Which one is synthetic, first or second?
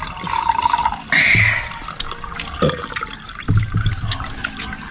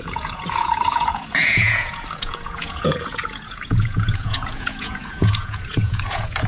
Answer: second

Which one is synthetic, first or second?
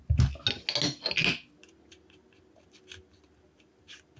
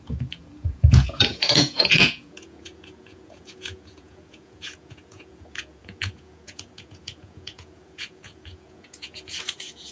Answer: second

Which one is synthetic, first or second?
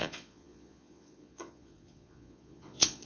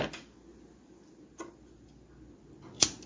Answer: first